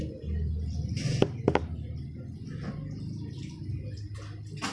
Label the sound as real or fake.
real